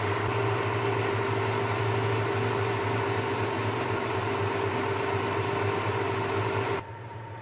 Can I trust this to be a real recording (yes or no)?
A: yes